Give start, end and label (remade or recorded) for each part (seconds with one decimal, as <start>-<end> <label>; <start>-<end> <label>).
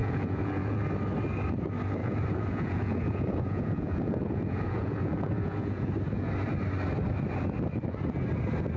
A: 0.0-0.8 remade; 0.8-2.0 recorded; 2.0-6.3 remade; 6.3-8.8 recorded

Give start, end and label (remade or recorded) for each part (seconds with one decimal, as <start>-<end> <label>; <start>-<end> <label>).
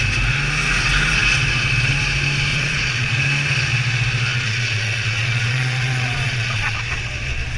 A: 0.0-2.5 recorded; 2.5-3.1 remade; 3.1-4.3 recorded; 4.3-7.6 remade